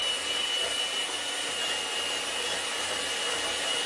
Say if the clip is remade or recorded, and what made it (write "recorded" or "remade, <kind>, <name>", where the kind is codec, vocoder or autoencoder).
recorded